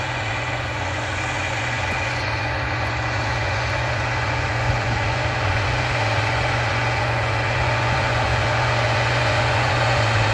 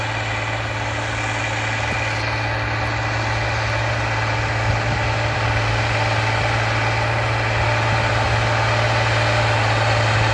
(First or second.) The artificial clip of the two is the first